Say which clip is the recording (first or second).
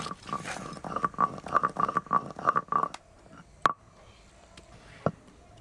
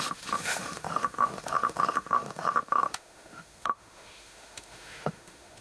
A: first